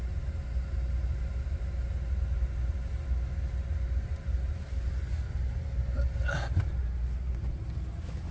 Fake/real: real